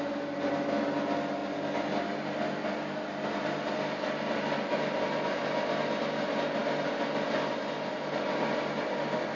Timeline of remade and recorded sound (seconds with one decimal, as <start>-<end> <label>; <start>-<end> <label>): 0.0-9.4 recorded